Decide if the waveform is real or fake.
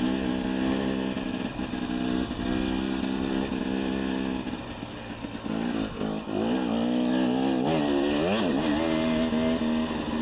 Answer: real